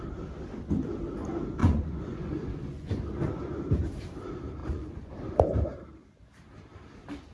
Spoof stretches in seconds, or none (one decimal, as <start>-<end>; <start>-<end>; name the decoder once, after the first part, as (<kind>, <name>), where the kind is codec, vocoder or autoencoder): 1.6-3.4 (vocoder, Vocos); 4.6-5.1